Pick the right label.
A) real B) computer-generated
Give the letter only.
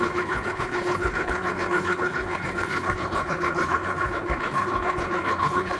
B